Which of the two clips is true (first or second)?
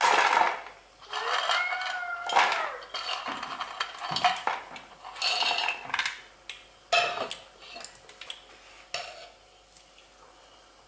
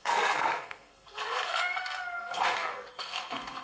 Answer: first